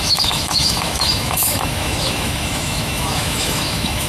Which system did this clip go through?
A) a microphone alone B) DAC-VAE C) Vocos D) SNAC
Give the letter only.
B